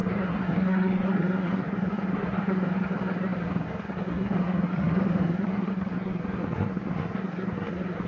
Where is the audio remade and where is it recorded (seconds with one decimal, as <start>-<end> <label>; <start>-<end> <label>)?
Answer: 0.0-8.1 remade